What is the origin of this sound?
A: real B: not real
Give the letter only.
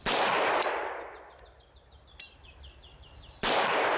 A